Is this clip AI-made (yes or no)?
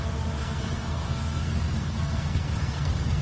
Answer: yes